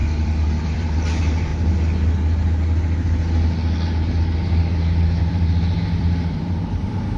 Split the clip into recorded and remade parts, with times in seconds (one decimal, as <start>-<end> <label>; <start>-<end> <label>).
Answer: 0.0-1.5 remade; 1.5-5.2 recorded; 5.2-7.2 remade